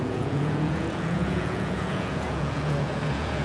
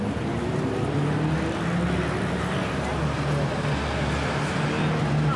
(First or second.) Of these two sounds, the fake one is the first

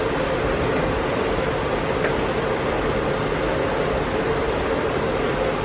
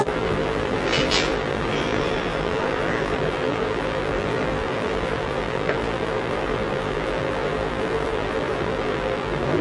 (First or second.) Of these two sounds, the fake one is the second